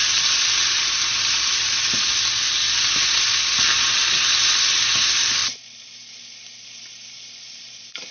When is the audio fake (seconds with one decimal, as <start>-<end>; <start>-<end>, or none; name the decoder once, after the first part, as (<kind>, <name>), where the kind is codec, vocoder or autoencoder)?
none

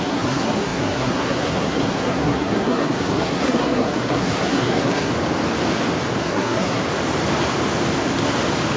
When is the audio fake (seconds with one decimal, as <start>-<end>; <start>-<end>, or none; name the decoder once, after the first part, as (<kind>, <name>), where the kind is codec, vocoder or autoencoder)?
0.0-5.1 (codec, SNAC); 6.2-6.8

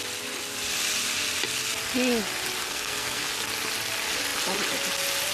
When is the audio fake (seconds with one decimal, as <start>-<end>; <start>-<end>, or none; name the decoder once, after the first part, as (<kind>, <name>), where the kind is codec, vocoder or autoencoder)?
2.6-3.3 (codec, SNAC)

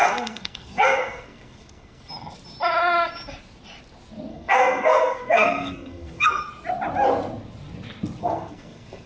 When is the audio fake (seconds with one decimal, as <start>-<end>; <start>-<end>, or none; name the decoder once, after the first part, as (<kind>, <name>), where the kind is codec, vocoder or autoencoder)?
0.0-2.1 (codec, SNAC); 4.3-6.4; 8.2-9.1

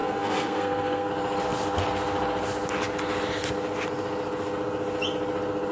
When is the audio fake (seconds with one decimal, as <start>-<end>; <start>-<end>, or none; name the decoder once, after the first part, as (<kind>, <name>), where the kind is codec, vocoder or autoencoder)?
0.0-1.1 (codec, SNAC)

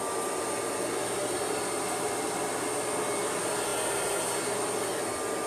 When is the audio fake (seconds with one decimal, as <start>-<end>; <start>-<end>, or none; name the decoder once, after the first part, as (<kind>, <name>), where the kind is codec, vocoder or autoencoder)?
none

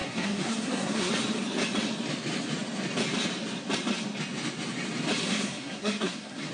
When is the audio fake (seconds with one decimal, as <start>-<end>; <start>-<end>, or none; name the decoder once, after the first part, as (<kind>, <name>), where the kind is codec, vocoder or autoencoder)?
0.0-1.1 (codec, SNAC); 5.2-6.5